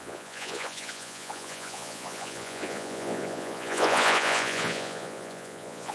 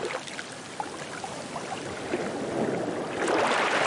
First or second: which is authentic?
second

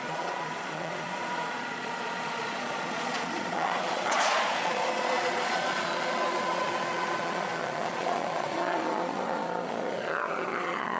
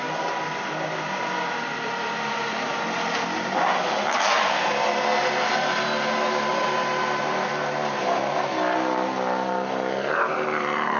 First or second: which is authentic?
second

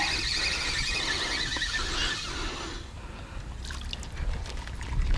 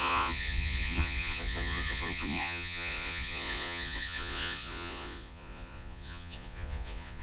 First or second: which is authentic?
first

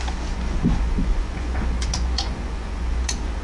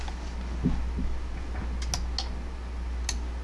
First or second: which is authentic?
second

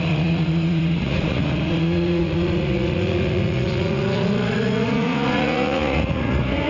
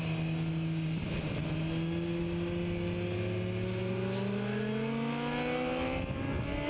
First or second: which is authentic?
second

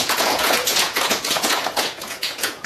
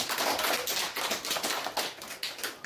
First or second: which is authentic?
second